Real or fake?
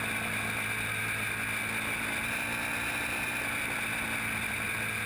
real